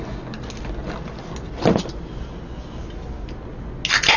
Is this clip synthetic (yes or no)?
no